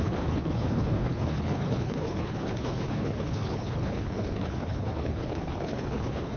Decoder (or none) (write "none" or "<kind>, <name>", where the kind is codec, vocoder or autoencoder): codec, HILCodec